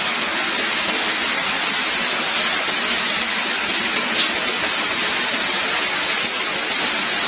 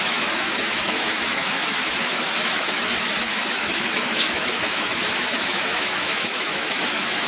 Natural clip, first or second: first